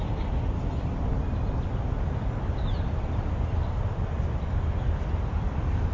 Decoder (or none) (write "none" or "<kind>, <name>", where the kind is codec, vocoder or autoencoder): none